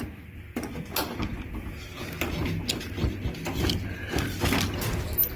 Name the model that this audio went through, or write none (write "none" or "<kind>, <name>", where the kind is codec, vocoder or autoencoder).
none